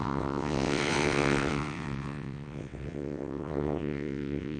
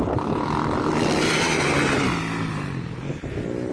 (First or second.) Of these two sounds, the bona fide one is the second